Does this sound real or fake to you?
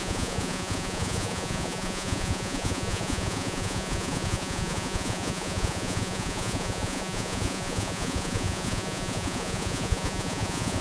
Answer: fake